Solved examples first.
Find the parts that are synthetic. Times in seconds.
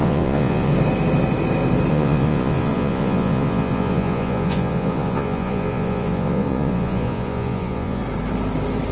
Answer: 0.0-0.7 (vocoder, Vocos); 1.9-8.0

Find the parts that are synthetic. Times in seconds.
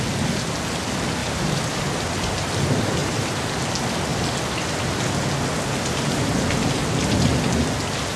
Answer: 1.2-1.8 (vocoder, BigVGAN v2); 3.0-3.5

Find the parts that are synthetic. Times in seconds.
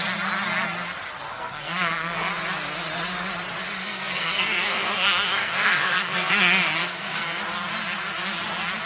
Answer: 1.3-2.3 (codec, SNAC); 3.8-6.3; 6.8-7.4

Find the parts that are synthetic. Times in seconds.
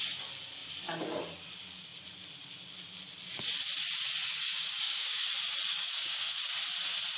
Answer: 4.2-5.3 (codec, DAC); 5.7-6.5